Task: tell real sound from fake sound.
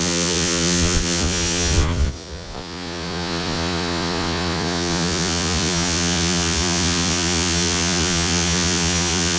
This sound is fake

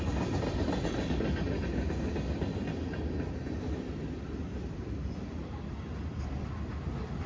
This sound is real